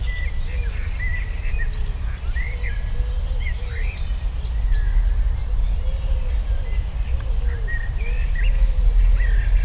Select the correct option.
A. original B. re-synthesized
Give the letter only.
A